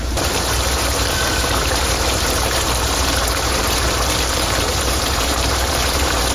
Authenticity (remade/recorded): remade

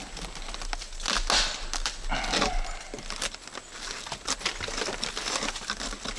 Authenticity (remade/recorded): recorded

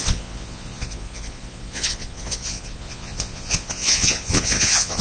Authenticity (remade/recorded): remade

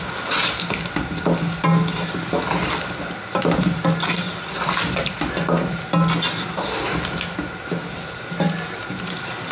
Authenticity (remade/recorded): recorded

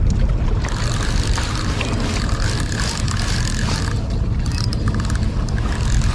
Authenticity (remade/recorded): recorded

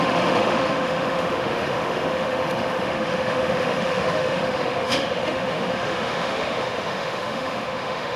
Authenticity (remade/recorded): remade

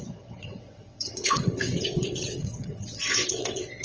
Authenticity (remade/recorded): remade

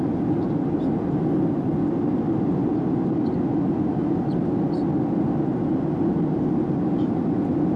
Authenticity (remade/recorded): recorded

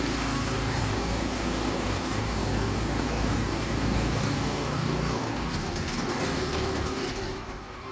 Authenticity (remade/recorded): remade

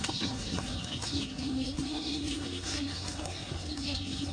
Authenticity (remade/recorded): remade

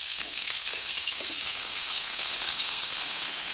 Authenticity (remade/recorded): remade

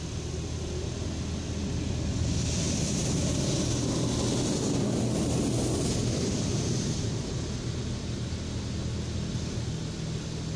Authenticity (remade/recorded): recorded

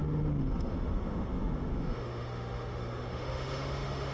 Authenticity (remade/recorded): remade